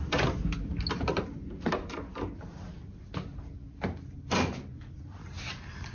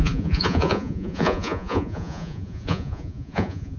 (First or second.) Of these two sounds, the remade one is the second